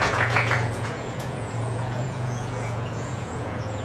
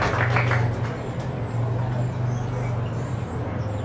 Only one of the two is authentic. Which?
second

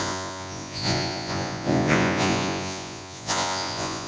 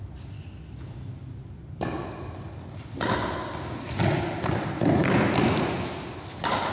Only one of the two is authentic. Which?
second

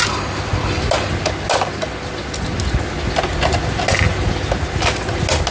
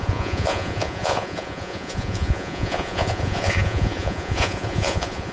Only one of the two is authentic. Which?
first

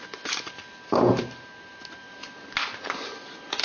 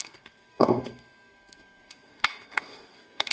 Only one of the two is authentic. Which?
first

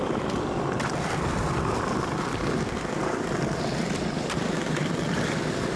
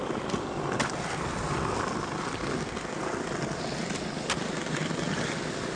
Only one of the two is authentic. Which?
second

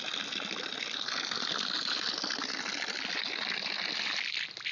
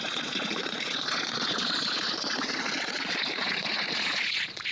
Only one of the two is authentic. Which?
first